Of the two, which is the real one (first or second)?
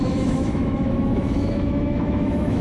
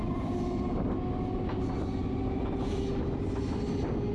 second